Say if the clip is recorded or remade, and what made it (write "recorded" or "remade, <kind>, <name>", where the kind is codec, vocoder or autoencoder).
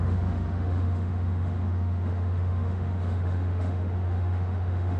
remade, autoencoder, DAC-VAE